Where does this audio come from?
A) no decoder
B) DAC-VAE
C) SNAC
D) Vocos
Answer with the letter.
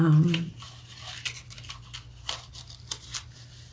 A